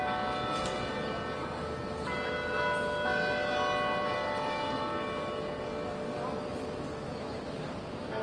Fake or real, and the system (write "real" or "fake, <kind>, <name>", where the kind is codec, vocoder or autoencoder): real